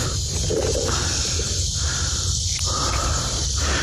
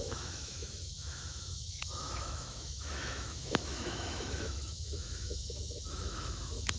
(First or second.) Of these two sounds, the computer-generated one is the second